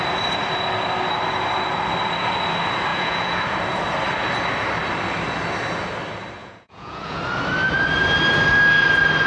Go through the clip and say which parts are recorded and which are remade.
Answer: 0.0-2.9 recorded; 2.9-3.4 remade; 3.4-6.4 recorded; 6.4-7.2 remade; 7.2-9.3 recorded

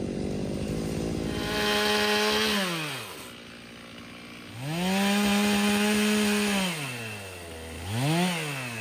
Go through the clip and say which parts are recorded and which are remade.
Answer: 0.0-8.8 recorded

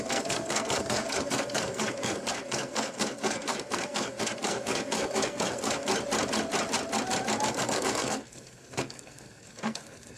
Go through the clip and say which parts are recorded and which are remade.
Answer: 0.0-5.9 remade; 5.9-7.5 recorded; 7.5-10.2 remade

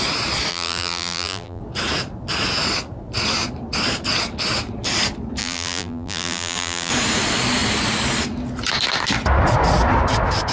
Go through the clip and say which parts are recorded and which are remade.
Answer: 0.0-0.5 recorded; 0.5-1.6 remade; 1.6-5.4 recorded; 5.4-6.9 remade; 6.9-10.5 recorded

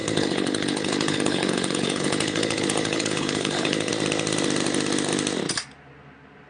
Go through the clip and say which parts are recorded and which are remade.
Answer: 0.0-3.9 remade; 3.9-6.5 recorded

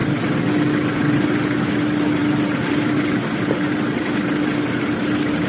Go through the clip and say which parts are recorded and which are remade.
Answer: 0.0-5.5 recorded